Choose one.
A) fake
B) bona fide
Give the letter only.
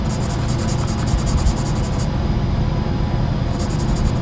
B